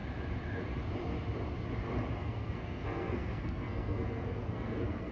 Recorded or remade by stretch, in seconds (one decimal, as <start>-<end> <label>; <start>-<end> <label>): 0.0-2.2 recorded; 2.2-5.1 remade